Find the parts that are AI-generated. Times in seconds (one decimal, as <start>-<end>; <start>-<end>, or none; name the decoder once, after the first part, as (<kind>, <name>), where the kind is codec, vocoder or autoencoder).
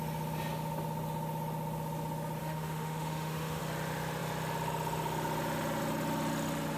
2.4-3.6 (autoencoder, DAC-VAE)